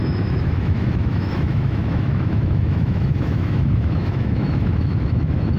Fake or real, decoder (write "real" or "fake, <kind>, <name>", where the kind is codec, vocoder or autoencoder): fake, autoencoder, DAC-VAE